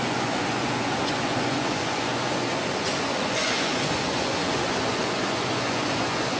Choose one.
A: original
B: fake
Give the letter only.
B